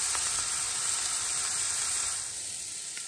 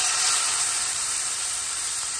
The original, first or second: first